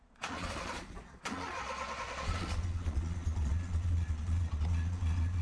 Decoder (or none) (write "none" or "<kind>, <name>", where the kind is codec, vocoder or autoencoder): vocoder, Vocos